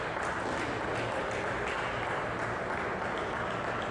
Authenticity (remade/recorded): recorded